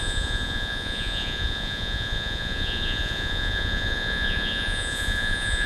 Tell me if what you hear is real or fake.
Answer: fake